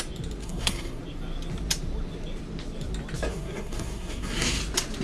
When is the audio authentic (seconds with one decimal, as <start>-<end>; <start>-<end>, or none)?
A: 0.0-0.4; 1.0-3.3; 4.6-5.0